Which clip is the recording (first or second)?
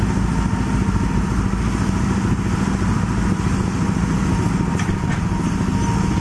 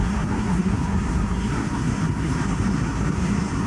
first